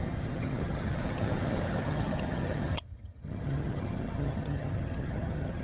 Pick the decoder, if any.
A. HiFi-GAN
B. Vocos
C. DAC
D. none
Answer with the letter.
A